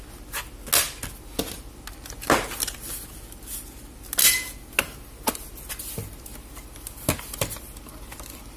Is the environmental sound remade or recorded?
recorded